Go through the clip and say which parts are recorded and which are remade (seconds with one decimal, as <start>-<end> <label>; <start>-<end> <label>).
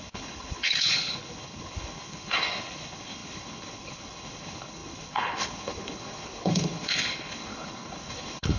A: 0.0-8.6 remade